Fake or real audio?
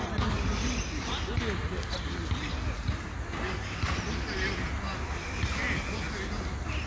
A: real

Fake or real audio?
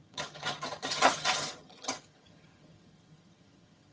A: fake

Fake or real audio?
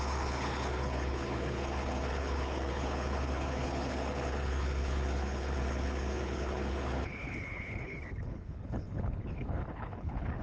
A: fake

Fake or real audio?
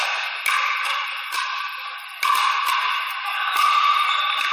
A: real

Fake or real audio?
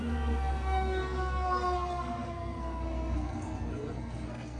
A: fake